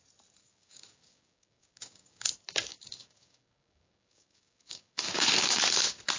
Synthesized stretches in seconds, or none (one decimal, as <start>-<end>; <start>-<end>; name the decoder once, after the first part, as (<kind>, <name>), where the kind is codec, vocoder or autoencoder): 0.4-2.3 (codec, DAC); 2.7-5.6